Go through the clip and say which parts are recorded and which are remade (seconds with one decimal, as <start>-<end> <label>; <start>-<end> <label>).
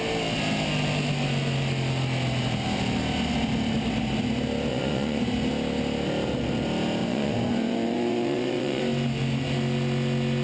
0.0-4.7 recorded; 4.7-5.3 remade; 5.3-7.0 recorded; 7.0-8.8 remade; 8.8-10.4 recorded